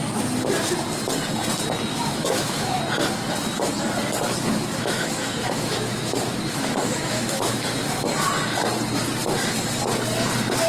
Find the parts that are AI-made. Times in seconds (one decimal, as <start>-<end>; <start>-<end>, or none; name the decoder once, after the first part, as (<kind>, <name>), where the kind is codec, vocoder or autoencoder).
1.9-2.8 (autoencoder, DAC-VAE); 4.3-8.1